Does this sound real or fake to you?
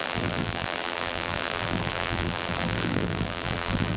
fake